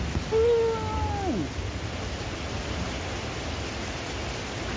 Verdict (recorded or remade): recorded